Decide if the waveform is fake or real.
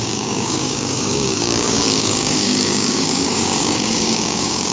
fake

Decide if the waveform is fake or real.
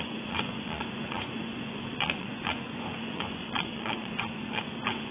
fake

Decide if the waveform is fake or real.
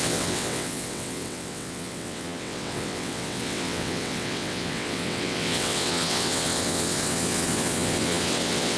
fake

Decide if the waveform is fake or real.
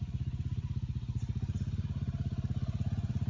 fake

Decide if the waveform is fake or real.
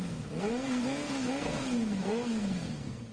fake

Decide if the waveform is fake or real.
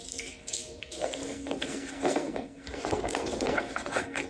fake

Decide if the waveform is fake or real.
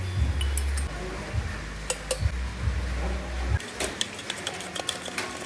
real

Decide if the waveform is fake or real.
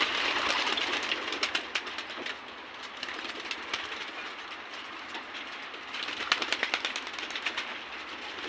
real